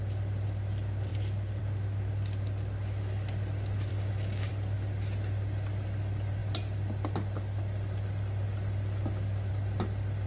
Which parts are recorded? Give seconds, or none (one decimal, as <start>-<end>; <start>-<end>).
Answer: 0.0-3.9; 4.5-10.3